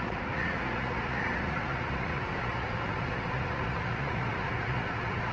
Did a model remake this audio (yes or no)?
yes